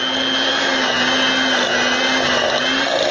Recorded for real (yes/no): yes